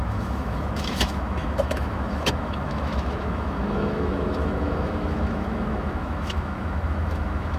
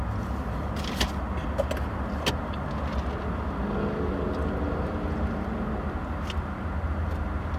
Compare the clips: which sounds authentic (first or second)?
second